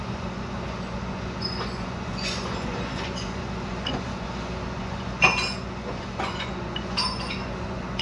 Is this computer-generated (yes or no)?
yes